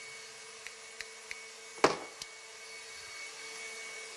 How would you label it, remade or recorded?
recorded